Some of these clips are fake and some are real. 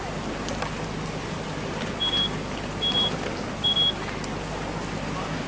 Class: real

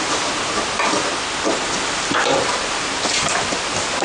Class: real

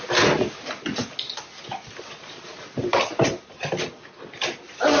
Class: real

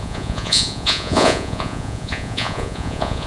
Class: fake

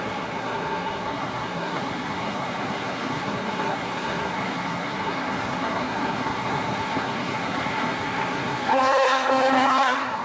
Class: fake